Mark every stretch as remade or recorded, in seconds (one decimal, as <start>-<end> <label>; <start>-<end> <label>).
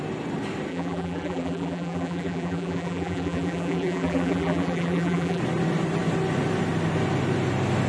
0.0-0.7 recorded; 0.7-5.4 remade; 5.4-7.9 recorded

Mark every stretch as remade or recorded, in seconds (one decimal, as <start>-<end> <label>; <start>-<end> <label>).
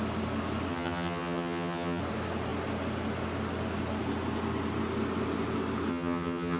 0.0-0.7 recorded; 0.7-2.0 remade; 2.0-5.9 recorded; 5.9-6.6 remade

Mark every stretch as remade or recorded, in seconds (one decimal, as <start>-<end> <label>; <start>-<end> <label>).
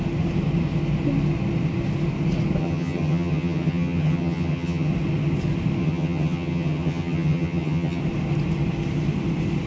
0.0-2.6 recorded; 2.6-4.9 remade; 4.9-5.8 recorded; 5.8-8.0 remade; 8.0-9.7 recorded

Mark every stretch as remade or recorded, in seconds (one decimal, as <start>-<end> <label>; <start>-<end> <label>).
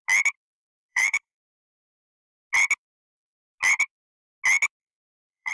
0.0-0.9 recorded; 0.9-2.0 remade; 2.0-4.8 recorded; 4.8-5.5 remade